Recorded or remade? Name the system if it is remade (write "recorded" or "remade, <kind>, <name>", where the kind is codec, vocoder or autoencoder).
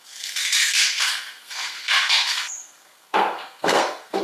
remade, codec, SNAC